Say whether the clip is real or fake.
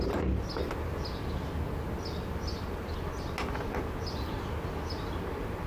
real